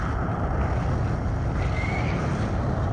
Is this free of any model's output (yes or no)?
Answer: yes